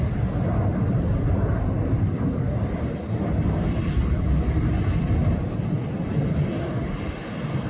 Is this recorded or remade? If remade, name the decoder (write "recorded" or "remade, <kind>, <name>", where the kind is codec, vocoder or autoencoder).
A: remade, vocoder, BigVGAN v2